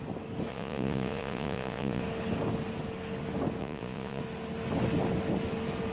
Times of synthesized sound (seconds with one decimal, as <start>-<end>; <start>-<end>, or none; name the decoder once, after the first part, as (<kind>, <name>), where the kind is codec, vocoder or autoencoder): 0.5-2.0 (vocoder, Vocos); 3.6-4.2